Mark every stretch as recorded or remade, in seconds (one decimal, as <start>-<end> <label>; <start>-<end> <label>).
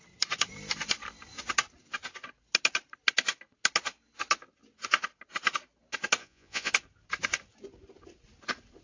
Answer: 0.0-6.2 recorded; 6.2-6.7 remade; 6.7-8.8 recorded